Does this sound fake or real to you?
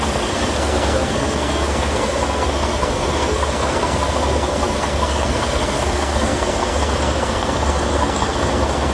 fake